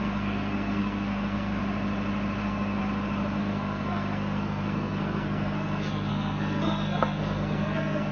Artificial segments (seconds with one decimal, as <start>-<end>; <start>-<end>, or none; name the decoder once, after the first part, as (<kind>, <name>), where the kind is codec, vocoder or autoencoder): 0.0-1.6 (codec, SNAC); 2.4-2.8; 3.4-8.1